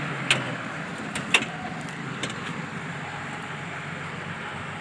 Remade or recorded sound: recorded